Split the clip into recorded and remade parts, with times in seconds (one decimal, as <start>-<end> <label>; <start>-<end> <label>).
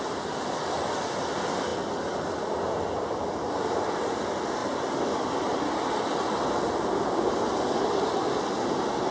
0.0-9.1 recorded